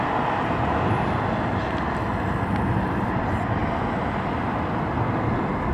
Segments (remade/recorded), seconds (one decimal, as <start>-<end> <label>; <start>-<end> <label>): 0.0-5.7 recorded